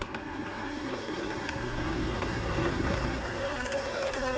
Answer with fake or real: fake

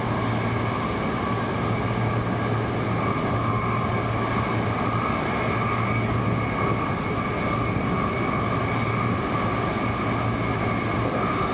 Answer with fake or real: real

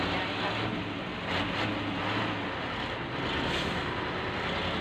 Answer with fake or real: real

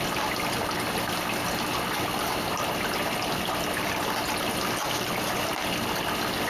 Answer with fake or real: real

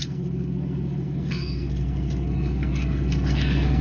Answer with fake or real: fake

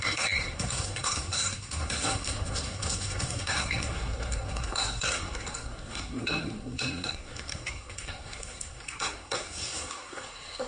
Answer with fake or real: fake